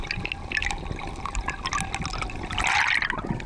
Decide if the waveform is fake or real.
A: real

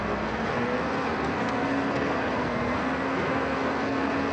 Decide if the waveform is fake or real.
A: fake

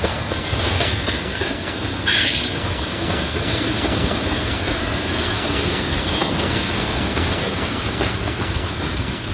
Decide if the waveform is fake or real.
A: fake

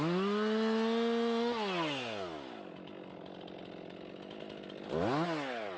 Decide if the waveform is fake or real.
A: real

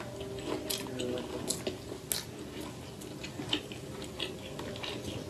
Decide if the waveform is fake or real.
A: real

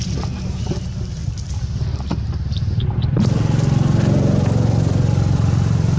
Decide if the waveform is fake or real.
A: real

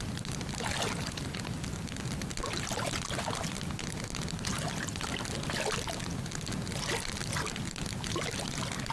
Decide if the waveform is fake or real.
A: real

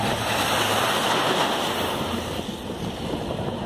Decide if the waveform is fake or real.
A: real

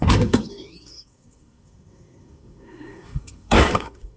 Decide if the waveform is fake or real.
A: fake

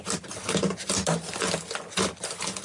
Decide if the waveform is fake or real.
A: real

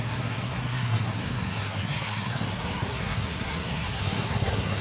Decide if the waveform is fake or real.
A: fake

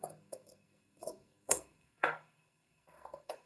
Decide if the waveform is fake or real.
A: fake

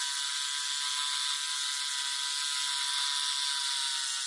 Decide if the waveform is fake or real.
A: real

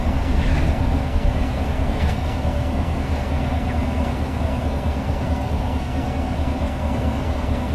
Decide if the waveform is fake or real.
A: fake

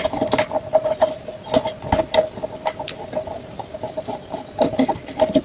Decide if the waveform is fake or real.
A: real